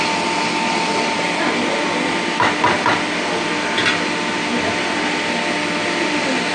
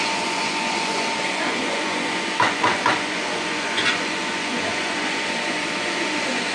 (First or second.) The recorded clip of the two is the first